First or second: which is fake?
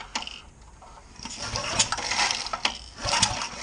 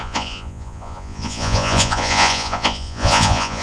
second